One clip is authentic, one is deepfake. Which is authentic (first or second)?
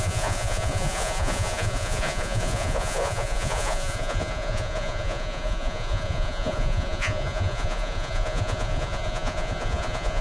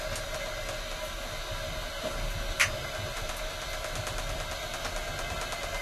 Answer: second